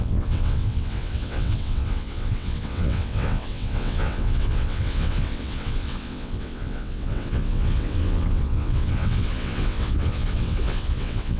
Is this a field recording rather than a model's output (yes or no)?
no